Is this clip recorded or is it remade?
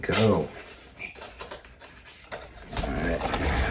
recorded